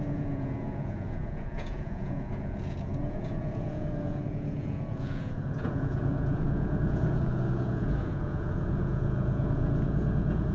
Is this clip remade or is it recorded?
remade